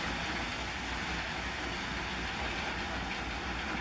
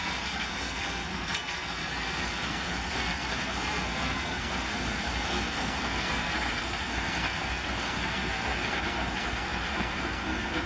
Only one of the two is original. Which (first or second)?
first